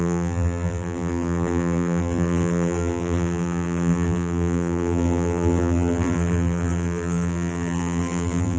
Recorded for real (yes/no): no